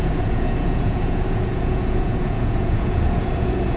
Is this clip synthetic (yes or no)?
yes